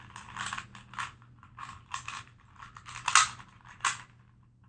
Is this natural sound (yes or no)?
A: yes